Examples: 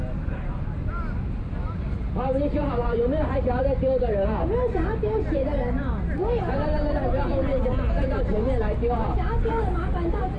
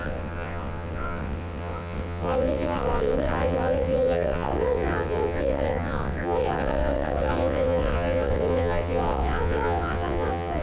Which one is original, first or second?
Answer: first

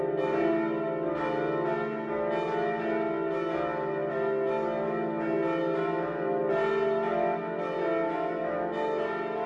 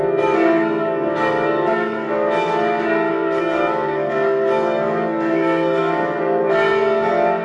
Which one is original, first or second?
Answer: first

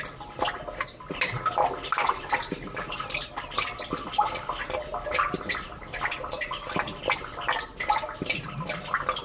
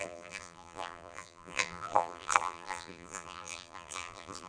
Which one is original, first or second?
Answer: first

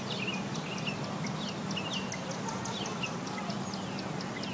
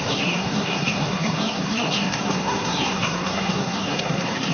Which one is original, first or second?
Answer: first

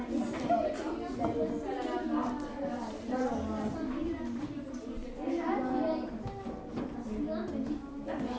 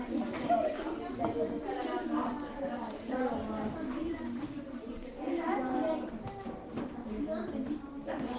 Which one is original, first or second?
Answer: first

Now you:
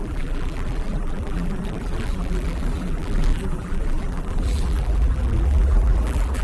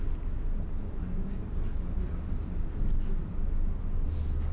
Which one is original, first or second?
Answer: second